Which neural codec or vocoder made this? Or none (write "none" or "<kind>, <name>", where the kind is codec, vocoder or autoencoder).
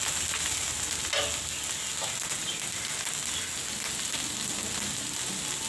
none